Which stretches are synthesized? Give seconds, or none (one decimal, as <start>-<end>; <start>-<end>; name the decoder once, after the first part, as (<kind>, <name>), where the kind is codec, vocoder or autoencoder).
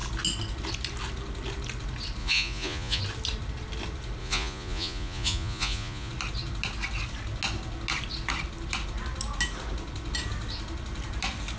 2.2-3.0 (vocoder, Vocos); 4.2-6.1